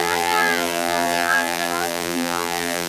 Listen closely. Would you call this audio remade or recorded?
remade